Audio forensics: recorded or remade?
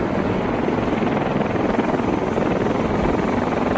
recorded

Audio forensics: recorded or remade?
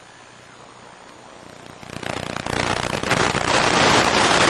recorded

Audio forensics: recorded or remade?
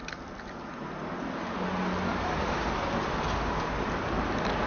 recorded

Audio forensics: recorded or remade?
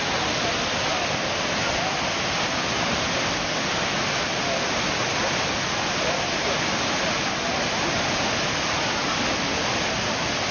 recorded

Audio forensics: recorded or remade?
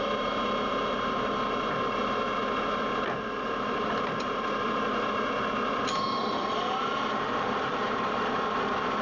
recorded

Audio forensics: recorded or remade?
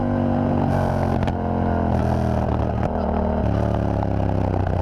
recorded